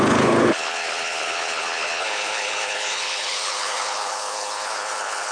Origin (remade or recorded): remade